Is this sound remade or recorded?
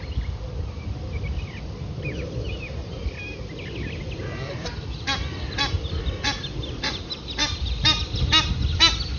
recorded